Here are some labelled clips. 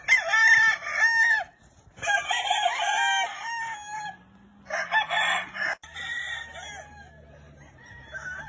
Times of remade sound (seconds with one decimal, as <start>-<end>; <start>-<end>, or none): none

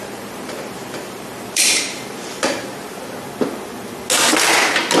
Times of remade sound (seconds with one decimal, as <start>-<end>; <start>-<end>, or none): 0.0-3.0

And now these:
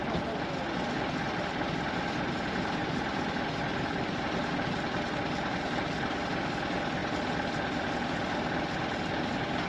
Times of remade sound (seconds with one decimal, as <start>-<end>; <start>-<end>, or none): 2.8-4.2; 7.0-7.9